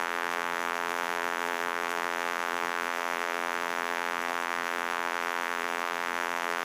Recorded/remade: remade